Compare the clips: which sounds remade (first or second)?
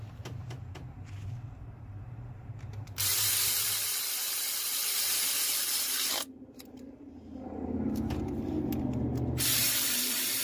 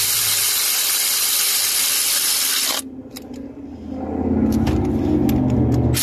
first